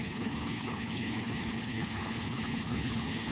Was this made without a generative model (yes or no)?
no